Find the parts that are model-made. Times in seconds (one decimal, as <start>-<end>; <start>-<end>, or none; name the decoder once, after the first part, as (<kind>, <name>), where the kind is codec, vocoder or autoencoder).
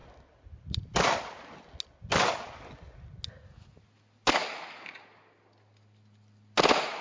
none